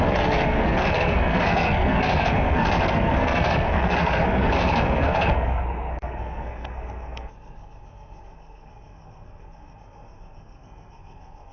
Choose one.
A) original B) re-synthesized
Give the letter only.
B